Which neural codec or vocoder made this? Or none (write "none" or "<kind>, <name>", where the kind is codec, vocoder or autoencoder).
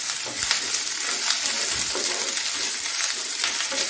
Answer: none